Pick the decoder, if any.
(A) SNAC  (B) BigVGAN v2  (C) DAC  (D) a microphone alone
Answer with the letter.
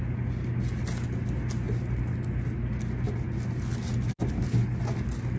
D